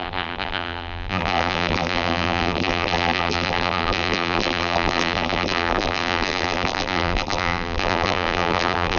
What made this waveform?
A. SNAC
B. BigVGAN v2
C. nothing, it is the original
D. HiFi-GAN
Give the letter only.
B